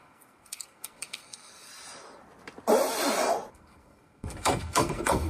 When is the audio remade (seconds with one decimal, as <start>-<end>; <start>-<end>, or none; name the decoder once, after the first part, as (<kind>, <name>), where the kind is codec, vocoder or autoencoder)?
0.0-1.7 (codec, SNAC); 3.5-5.3